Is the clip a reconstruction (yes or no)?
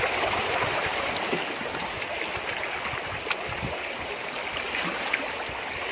no